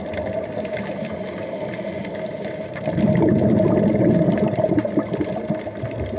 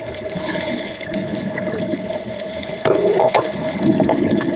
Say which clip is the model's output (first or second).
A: second